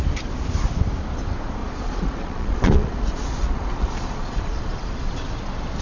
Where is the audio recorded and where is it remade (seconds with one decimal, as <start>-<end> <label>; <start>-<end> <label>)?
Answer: 0.0-1.6 recorded; 1.6-5.1 remade; 5.1-5.8 recorded